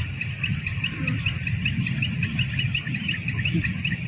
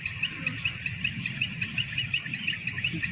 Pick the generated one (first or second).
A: second